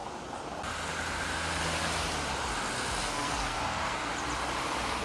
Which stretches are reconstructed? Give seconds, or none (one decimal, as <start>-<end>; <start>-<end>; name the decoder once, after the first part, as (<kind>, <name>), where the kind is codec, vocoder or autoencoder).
3.0-4.1 (codec, SNAC)